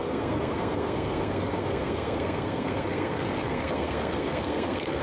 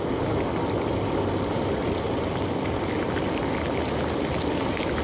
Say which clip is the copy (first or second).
first